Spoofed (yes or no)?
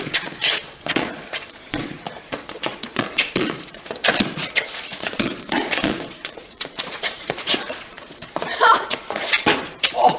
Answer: yes